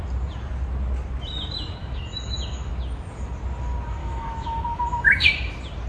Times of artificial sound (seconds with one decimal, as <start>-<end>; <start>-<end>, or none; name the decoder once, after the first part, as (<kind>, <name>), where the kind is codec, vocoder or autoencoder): 1.8-2.7 (autoencoder, DAC-VAE); 4.0-5.5

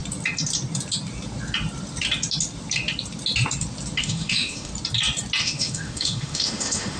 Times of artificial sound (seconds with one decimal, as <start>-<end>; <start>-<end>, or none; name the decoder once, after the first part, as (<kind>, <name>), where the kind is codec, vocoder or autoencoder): 4.0-4.7 (autoencoder, DAC-VAE); 5.4-7.0